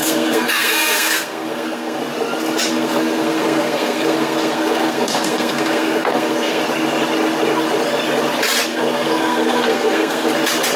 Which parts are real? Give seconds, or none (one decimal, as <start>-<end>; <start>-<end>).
2.0-2.7; 6.6-8.7; 10.3-10.8